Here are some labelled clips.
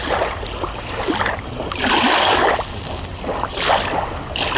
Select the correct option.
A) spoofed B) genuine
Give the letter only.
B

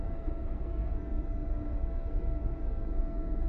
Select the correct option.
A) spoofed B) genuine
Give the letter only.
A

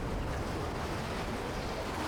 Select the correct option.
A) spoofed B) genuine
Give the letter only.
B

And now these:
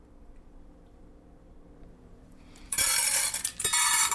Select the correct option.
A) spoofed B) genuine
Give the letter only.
A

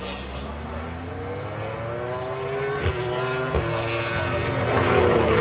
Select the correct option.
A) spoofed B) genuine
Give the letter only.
B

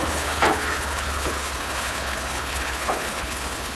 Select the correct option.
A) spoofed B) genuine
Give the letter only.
A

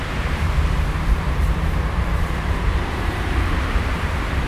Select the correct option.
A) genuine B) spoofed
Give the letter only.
B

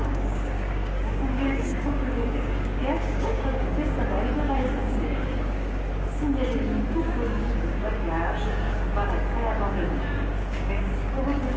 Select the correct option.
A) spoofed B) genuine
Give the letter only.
A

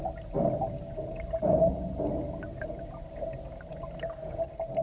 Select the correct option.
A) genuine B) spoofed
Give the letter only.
A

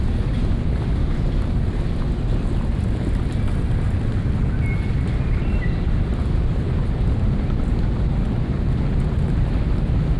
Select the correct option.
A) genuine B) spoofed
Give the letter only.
A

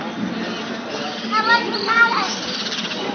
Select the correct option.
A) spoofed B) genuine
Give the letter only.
B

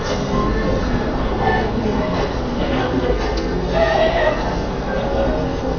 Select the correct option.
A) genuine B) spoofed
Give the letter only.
B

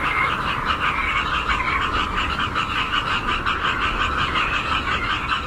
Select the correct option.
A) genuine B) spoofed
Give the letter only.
B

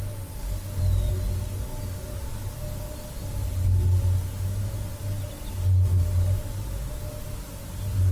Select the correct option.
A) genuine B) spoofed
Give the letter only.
A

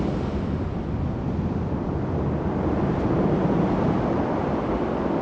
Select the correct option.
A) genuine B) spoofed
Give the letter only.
A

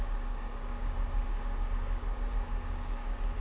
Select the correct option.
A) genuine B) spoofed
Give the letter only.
B